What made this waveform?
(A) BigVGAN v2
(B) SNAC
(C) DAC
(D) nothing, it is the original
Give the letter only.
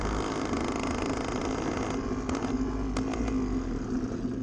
D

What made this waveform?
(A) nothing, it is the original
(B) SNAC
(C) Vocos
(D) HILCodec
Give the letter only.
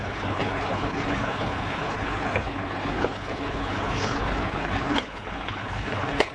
D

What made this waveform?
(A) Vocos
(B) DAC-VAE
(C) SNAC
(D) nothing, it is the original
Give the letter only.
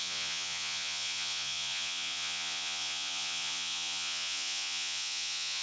A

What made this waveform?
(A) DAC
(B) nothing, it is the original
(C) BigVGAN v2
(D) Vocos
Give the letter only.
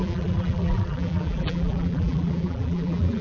C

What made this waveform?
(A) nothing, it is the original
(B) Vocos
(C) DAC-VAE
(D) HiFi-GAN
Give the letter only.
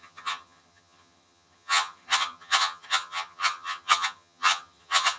D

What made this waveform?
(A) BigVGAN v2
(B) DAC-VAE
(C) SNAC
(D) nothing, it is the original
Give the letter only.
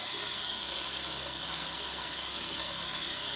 C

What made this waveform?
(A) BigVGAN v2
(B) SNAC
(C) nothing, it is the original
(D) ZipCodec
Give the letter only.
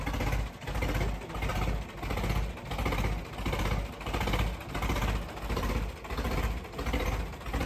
C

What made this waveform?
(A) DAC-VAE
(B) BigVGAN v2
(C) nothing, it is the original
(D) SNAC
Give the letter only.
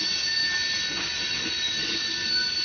C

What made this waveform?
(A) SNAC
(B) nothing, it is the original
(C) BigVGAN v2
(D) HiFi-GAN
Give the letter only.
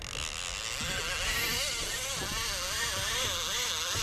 B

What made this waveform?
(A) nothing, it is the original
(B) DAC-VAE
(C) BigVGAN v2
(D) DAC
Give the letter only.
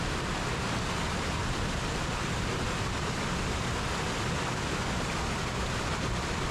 A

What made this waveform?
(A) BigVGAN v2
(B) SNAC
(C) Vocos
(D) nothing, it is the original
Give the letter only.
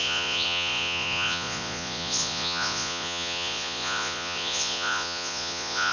C